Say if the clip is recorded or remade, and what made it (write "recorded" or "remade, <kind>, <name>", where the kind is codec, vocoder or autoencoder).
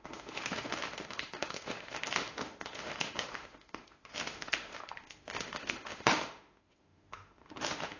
remade, autoencoder, DAC-VAE